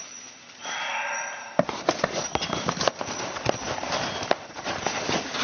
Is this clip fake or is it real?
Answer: real